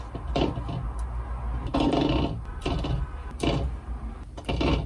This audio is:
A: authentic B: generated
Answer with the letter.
A